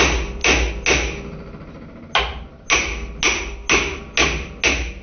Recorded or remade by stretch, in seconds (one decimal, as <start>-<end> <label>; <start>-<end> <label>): 0.0-5.0 recorded